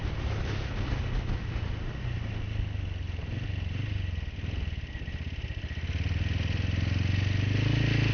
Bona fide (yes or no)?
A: yes